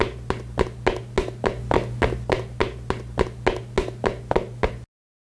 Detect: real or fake real